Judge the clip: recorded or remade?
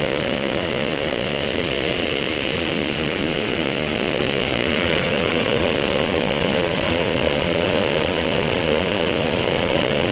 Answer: remade